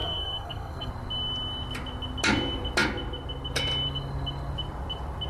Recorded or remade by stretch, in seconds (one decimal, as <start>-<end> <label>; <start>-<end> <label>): 0.0-0.9 remade; 0.9-5.3 recorded